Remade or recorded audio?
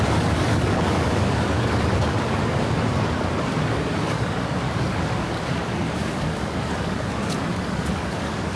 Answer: remade